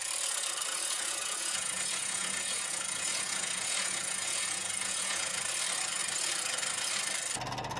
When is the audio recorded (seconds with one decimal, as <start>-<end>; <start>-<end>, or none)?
0.0-0.7; 5.4-7.8